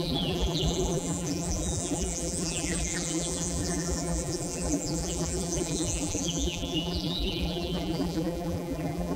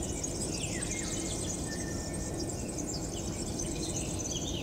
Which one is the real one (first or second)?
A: second